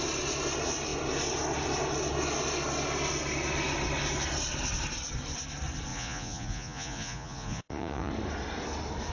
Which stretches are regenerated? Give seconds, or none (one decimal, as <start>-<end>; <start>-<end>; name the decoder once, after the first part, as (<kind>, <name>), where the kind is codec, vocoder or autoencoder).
5.9-8.1 (vocoder, Vocos)